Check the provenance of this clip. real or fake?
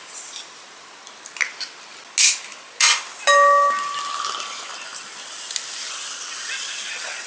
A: real